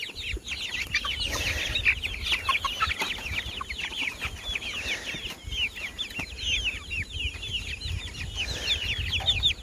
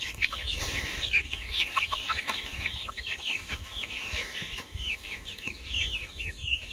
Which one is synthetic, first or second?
second